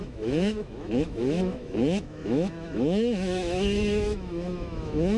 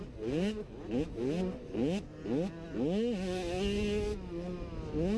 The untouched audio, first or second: second